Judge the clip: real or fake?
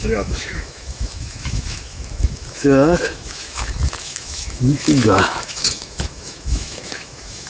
fake